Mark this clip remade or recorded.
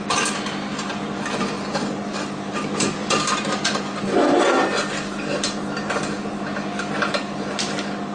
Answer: recorded